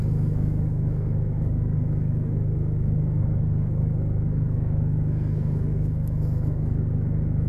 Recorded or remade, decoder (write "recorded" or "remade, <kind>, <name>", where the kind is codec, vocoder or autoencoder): remade, codec, SNAC